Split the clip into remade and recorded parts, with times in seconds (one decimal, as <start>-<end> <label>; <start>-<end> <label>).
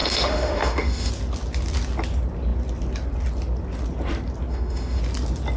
0.0-1.1 remade; 1.1-4.5 recorded; 4.5-5.0 remade; 5.0-5.6 recorded